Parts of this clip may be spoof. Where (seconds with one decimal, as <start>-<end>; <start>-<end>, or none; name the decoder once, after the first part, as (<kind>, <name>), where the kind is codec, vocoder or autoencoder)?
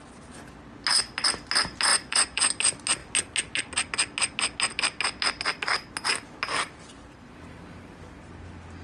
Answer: 1.9-2.5 (vocoder, Vocos)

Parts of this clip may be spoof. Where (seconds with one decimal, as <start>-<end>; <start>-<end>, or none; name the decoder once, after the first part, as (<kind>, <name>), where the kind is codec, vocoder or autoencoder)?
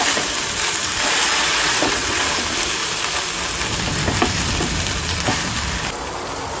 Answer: 1.4-2.2 (vocoder, WaveNeXt)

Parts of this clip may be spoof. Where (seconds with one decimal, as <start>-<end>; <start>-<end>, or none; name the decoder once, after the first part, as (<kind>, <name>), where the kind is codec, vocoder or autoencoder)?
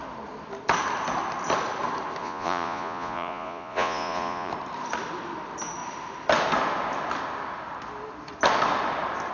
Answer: 2.2-4.5 (vocoder, Vocos)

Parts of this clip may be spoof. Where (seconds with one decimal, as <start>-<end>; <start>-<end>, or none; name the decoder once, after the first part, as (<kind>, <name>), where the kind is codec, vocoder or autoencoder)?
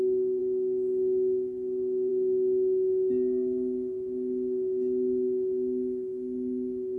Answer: none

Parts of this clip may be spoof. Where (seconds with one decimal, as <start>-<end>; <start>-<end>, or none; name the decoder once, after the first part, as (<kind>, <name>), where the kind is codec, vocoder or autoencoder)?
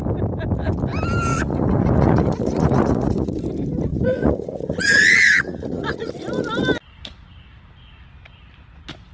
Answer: 1.3-3.4 (vocoder, Vocos); 3.9-6.1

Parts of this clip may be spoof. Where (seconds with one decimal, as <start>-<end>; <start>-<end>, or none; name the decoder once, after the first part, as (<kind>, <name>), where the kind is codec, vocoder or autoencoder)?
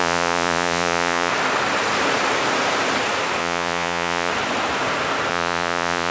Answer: 0.0-1.3 (vocoder, Vocos); 3.4-4.3; 5.3-6.1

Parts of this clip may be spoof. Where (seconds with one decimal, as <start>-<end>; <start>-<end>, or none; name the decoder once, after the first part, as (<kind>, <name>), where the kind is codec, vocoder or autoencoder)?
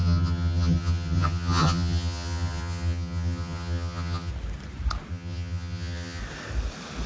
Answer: 0.0-4.3 (vocoder, HiFi-GAN); 5.1-6.2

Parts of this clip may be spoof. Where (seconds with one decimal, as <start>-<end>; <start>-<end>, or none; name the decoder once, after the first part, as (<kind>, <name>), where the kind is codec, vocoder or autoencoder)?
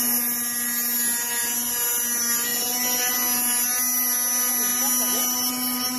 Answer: 2.5-3.1 (vocoder, BigVGAN v2)